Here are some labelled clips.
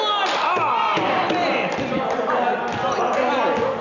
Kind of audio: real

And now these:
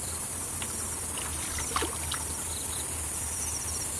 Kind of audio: real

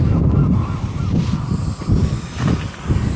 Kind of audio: real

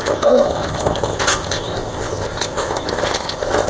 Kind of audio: fake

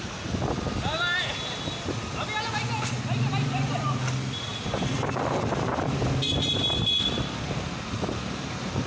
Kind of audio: real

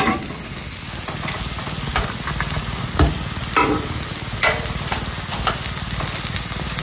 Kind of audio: real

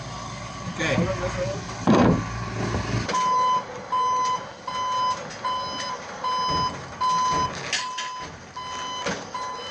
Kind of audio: real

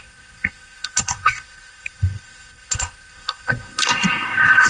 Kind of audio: fake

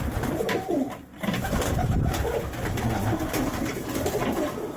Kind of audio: fake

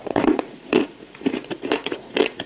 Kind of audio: fake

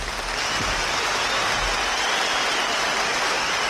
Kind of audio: real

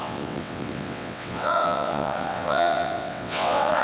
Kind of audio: fake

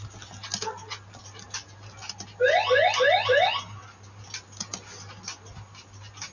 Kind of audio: real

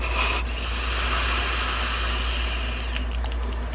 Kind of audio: real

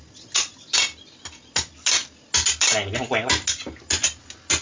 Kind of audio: real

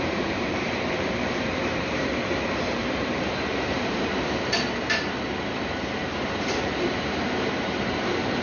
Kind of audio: fake